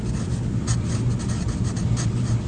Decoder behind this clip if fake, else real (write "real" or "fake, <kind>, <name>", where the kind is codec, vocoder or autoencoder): real